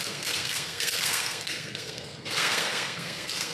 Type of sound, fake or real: fake